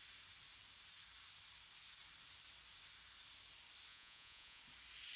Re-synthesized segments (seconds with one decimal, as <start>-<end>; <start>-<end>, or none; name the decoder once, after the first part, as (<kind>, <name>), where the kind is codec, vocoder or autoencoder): 3.9-4.6 (vocoder, Vocos)